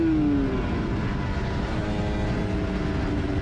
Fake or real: real